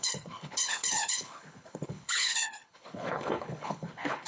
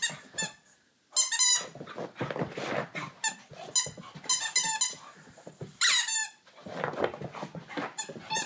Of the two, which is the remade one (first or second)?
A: first